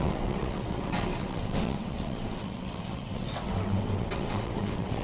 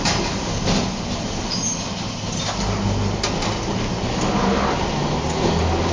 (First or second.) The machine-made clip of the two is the first